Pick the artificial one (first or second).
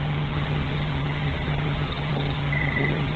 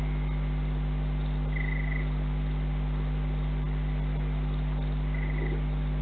first